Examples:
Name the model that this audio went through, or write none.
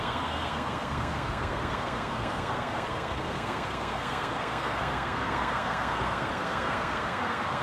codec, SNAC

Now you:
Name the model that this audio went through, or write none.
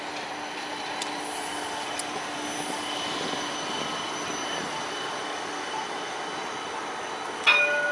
none